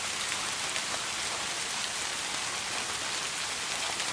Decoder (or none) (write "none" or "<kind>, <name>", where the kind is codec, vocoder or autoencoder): none